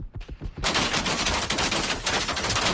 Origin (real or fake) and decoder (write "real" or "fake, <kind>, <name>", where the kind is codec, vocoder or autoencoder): fake, vocoder, BigVGAN v2